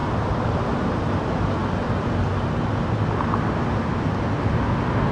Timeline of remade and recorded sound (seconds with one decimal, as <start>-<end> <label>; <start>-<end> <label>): 0.0-5.1 recorded